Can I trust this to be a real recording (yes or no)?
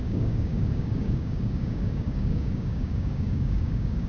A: no